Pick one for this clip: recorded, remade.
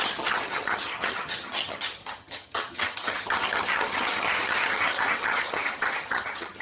remade